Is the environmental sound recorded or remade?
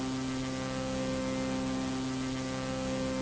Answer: recorded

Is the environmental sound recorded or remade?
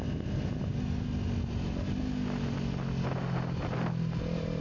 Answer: recorded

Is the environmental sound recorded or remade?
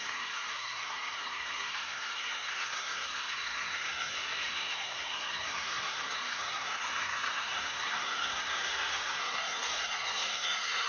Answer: remade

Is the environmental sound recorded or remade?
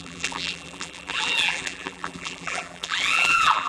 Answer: remade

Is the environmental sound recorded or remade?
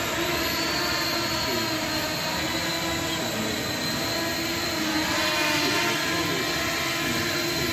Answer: recorded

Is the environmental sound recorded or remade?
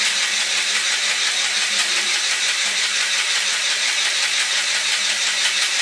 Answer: recorded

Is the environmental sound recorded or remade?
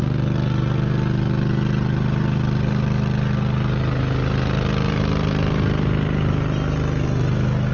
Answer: recorded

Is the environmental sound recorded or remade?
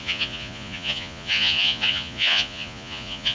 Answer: remade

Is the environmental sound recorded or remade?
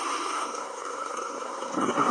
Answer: remade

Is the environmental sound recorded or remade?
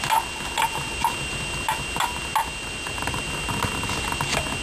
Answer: recorded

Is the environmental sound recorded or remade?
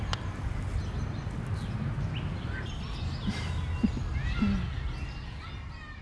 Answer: recorded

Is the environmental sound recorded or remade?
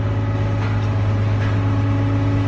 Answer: recorded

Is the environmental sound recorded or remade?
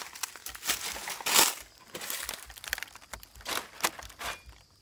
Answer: recorded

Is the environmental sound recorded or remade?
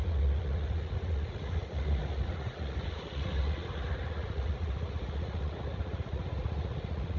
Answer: remade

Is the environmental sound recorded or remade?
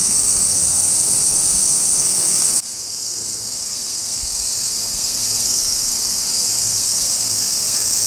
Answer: remade